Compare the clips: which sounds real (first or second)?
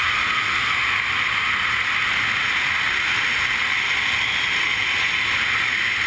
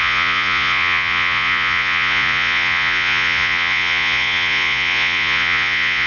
first